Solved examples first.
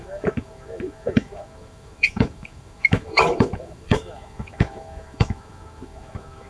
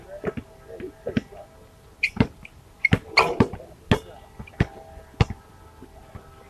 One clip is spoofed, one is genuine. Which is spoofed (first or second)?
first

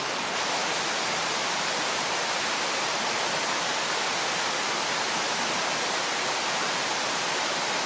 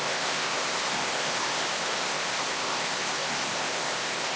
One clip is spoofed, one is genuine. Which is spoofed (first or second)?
second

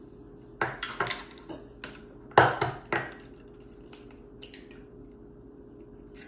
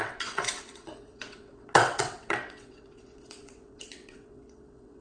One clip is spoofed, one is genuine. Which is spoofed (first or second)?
second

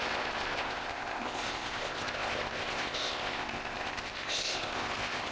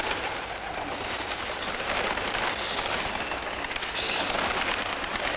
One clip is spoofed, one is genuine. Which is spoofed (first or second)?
first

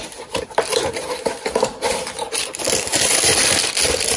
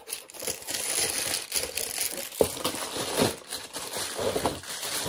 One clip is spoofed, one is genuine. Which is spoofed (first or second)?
first